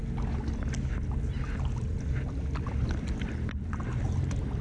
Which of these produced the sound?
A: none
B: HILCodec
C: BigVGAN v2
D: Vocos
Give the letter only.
A